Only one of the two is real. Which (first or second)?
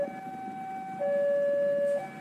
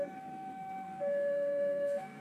first